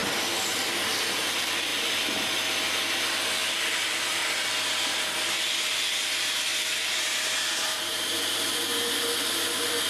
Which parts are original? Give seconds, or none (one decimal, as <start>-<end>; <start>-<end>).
0.0-4.2; 4.7-6.5; 8.5-9.9